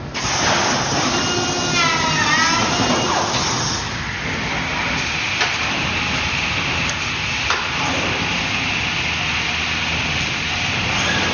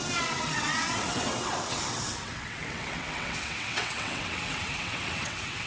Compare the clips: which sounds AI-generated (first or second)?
second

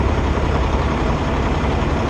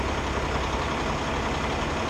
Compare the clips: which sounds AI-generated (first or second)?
first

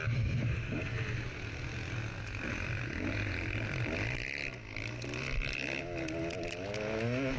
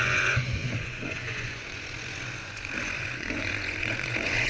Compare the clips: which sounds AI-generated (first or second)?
second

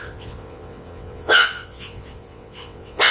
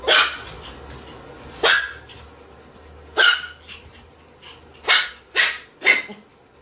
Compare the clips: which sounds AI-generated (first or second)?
first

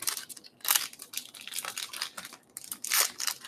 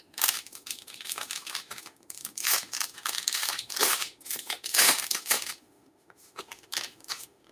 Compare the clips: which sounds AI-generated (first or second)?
second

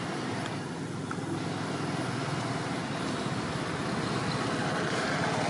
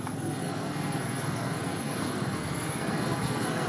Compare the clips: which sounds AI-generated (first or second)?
second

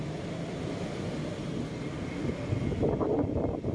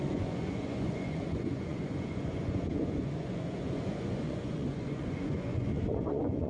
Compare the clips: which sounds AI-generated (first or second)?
second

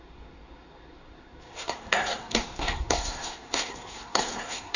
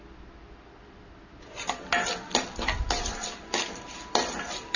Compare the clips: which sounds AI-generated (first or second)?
first